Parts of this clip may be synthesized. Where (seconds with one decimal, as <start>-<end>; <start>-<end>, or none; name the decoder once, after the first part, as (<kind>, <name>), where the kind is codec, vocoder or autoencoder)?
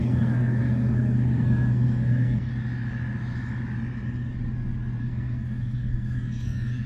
0.0-2.5 (codec, SNAC); 5.0-6.9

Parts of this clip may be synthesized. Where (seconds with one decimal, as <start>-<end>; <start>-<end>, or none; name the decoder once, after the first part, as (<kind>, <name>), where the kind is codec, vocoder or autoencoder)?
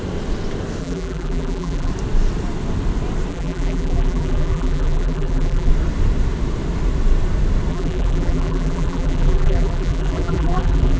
0.8-1.9 (vocoder, BigVGAN v2); 3.3-5.7; 7.7-11.0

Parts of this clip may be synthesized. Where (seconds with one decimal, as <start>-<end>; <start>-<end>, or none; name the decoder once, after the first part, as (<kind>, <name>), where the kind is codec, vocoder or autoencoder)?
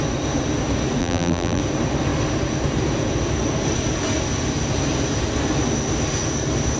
1.0-1.6 (vocoder, BigVGAN v2)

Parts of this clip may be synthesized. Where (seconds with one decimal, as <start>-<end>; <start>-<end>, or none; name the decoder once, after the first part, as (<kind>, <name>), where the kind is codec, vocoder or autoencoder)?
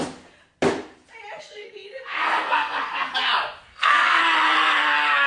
1.4-3.1 (codec, SNAC); 3.7-4.2